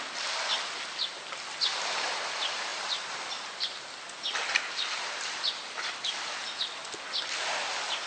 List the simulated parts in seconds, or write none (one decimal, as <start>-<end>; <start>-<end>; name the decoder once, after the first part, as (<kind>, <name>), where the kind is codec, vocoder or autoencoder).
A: none